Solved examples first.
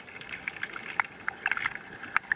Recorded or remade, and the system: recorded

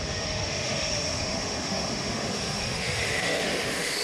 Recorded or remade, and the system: remade, autoencoder, DAC-VAE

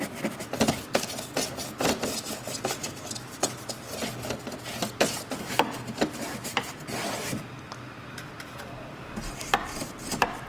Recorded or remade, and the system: recorded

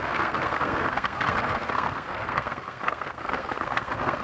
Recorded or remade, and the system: remade, codec, SNAC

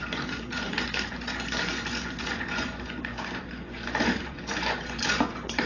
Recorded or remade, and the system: remade, vocoder, Vocos